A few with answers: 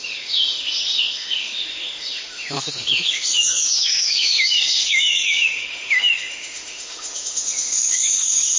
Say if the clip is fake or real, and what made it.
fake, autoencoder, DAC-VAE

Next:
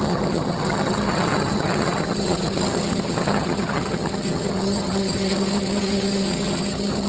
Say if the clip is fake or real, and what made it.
fake, vocoder, HiFi-GAN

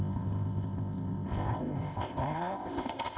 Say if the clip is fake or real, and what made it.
fake, codec, ZipCodec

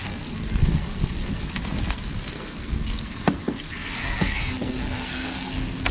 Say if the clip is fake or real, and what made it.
fake, codec, SNAC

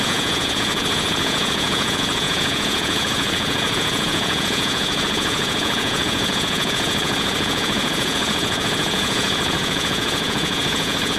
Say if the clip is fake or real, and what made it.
fake, vocoder, Vocos